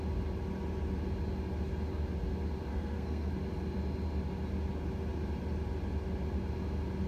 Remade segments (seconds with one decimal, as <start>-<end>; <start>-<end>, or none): 2.7-3.3